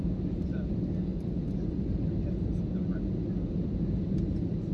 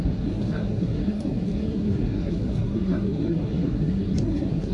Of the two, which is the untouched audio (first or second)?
first